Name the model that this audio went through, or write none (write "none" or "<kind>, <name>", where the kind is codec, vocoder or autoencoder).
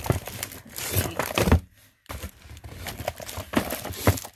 none